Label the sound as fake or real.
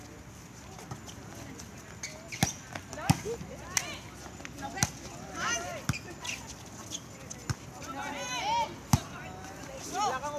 real